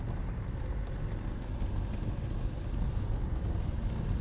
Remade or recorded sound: recorded